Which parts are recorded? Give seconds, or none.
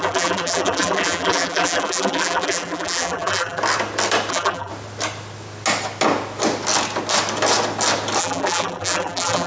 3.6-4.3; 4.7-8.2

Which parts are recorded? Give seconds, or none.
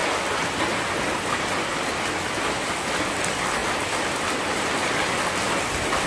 0.0-6.1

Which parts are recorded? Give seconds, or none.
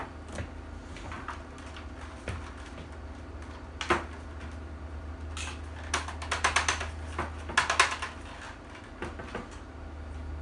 0.0-10.4